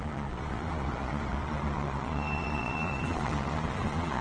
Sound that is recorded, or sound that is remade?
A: remade